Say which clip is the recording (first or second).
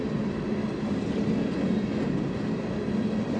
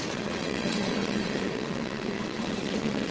first